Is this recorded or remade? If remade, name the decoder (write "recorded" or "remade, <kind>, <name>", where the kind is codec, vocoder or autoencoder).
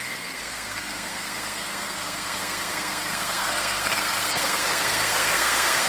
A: remade, codec, SNAC